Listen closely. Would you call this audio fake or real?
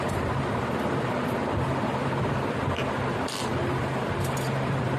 fake